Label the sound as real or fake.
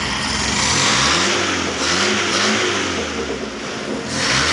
real